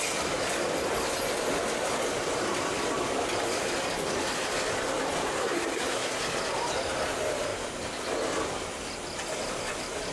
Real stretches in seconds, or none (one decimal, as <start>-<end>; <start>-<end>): 0.0-5.4; 6.2-10.1

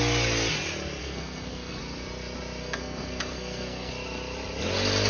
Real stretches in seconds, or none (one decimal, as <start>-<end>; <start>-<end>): 0.0-1.0; 1.8-2.6; 3.9-5.1

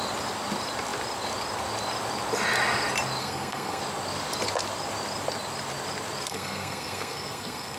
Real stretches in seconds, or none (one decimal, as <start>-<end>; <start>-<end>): 0.0-3.2; 3.8-6.3

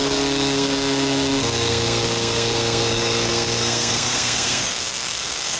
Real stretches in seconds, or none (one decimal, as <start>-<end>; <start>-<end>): none

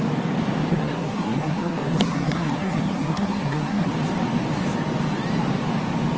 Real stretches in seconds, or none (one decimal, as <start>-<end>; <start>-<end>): 0.0-0.7; 3.9-6.2

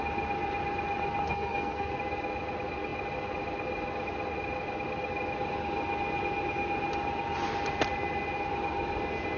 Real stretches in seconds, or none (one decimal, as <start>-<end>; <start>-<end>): 0.0-1.2; 1.9-9.4

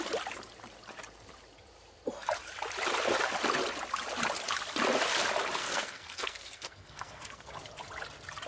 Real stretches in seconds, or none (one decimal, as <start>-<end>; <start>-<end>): 0.0-5.6; 7.5-8.5